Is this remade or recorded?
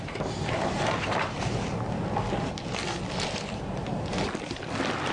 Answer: recorded